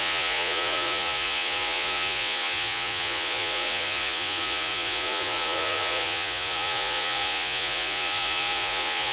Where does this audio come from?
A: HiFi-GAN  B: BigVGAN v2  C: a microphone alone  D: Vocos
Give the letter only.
D